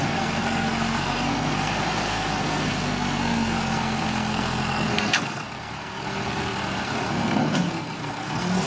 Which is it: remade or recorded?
remade